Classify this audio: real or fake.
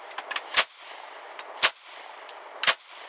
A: real